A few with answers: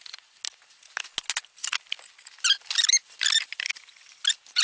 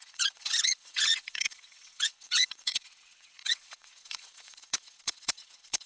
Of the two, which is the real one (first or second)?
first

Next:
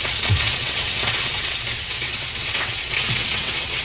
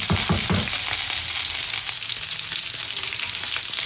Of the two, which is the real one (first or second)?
second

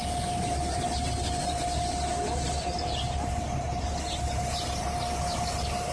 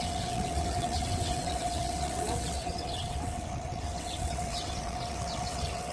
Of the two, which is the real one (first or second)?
first